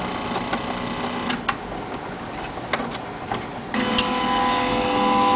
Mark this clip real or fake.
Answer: real